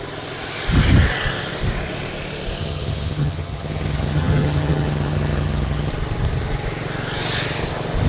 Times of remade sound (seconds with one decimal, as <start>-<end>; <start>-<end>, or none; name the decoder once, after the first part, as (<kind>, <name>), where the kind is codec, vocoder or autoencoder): 2.6-5.9 (vocoder, HiFi-GAN)